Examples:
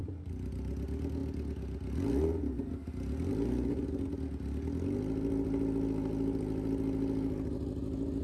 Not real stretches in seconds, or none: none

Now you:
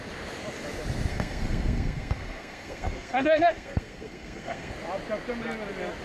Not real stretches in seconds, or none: 1.1-4.7 (codec, SNAC)

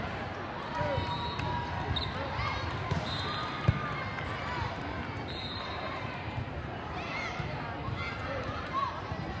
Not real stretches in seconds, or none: 8.2-8.9 (vocoder, BigVGAN v2)

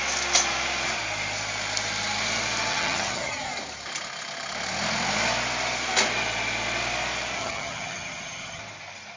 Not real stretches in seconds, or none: 2.7-3.5 (vocoder, HiFi-GAN); 7.4-8.6

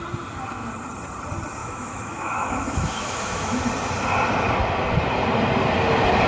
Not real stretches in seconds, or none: 1.6-3.6 (autoencoder, DAC-VAE)

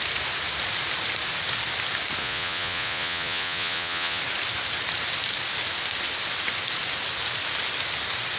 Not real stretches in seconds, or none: 2.2-4.2 (vocoder, Vocos)

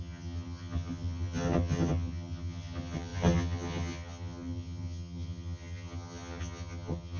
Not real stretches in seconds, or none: 0.0-7.2 (vocoder, HiFi-GAN)

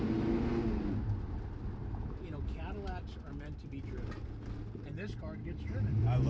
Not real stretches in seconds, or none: 3.0-3.7 (vocoder, BigVGAN v2); 5.4-6.3